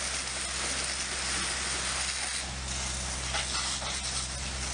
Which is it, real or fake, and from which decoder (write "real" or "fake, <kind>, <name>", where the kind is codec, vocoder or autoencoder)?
real